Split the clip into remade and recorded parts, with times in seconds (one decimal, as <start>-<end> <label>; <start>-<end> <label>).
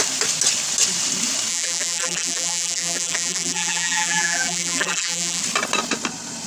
0.0-1.5 recorded; 1.5-5.4 remade; 5.4-6.5 recorded